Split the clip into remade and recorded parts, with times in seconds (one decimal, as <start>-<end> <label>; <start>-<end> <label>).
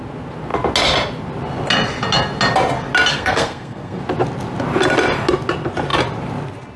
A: 0.0-3.1 recorded; 3.1-4.0 remade; 4.0-6.8 recorded